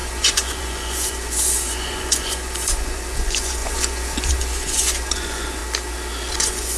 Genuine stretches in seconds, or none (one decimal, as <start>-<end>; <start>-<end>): 5.6-6.3